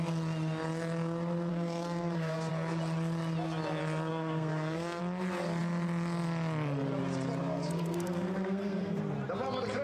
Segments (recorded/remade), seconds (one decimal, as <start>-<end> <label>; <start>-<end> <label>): 0.0-1.5 recorded; 1.5-2.5 remade; 2.5-4.1 recorded; 4.1-5.0 remade; 5.0-7.4 recorded; 7.4-9.0 remade; 9.0-9.8 recorded